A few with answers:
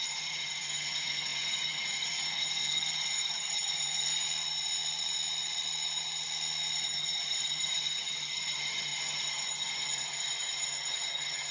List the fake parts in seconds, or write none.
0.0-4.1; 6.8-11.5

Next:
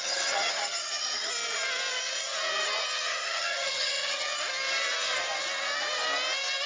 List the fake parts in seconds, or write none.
0.0-1.3; 3.1-4.3

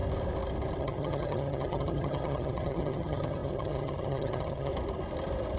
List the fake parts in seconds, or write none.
0.8-4.7

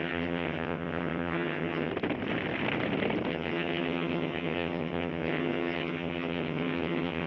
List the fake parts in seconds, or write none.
0.0-1.9; 3.3-7.3

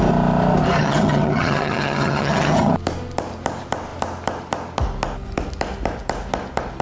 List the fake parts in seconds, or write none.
0.8-2.7

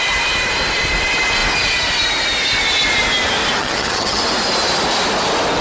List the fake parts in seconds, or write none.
3.6-4.2